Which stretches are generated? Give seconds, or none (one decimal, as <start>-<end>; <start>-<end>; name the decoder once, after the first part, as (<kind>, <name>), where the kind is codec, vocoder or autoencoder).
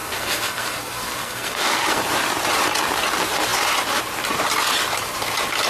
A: 0.0-2.0 (codec, SNAC)